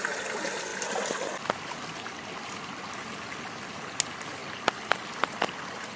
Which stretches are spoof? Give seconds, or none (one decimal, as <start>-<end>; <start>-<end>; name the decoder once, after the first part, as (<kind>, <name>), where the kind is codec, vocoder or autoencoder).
0.7-1.3 (vocoder, BigVGAN v2); 4.4-6.0